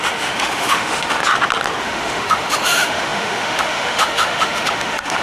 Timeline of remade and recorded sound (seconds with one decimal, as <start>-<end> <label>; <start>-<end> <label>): 0.0-1.2 remade; 1.2-1.8 recorded; 1.8-5.2 remade